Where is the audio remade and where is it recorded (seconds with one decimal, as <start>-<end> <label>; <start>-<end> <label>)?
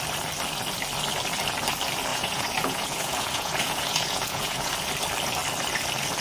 0.0-2.1 recorded; 2.1-4.7 remade; 4.7-6.2 recorded